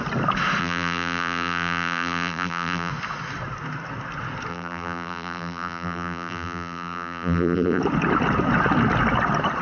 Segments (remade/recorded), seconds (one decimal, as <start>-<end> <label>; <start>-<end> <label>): 0.0-0.6 recorded; 0.6-2.9 remade; 2.9-4.5 recorded; 4.5-7.8 remade; 7.8-9.6 recorded